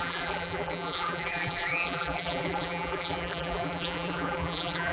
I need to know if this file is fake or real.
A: fake